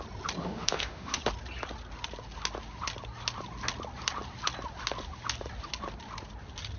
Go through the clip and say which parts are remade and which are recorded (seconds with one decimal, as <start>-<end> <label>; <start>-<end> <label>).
0.0-0.4 recorded; 0.4-1.2 remade; 1.2-6.8 recorded